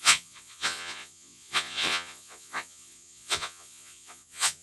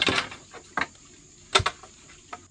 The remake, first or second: first